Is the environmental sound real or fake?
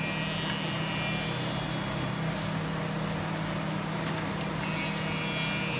real